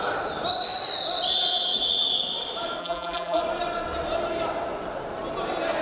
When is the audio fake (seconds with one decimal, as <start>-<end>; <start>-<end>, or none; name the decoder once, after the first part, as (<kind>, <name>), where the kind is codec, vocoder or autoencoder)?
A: 2.8-3.4 (vocoder, BigVGAN v2)